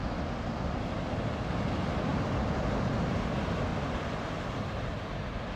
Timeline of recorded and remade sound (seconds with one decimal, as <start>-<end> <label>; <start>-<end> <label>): 0.0-2.1 recorded; 2.1-3.0 remade; 3.0-5.6 recorded